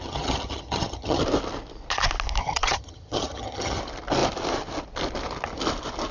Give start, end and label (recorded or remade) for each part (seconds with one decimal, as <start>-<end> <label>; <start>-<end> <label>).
0.0-1.2 remade; 1.2-2.4 recorded; 2.4-3.8 remade; 3.8-6.1 recorded